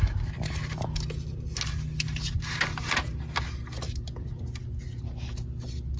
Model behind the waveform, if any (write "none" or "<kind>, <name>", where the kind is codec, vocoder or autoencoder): none